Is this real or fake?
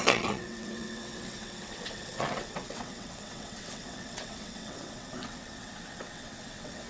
fake